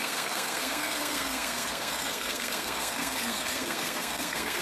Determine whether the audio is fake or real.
fake